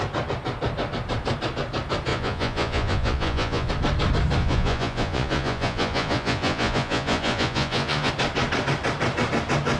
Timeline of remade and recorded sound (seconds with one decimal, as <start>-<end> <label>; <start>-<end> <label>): 0.0-2.1 recorded; 2.1-3.7 remade; 3.7-4.4 recorded; 4.4-8.1 remade; 8.1-9.8 recorded